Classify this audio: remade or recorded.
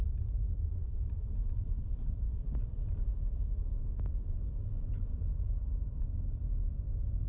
remade